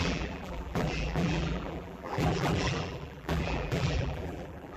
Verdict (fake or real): fake